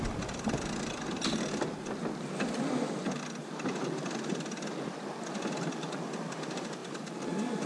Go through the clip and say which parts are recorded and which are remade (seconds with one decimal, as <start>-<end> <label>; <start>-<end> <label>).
0.0-7.7 recorded